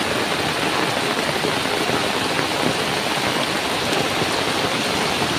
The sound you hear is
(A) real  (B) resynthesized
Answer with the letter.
A